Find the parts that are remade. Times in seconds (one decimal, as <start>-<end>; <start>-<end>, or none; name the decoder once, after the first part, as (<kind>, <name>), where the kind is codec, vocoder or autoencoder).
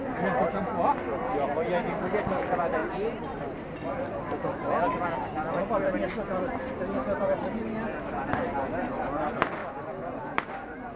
2.8-3.9 (vocoder, BigVGAN v2)